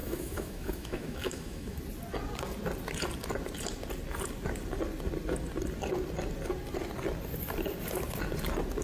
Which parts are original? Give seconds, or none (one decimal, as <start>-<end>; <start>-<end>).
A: 1.8-8.8